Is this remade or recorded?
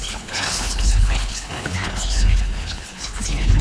remade